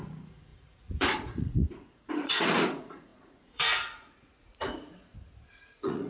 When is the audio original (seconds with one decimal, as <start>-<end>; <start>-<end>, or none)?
none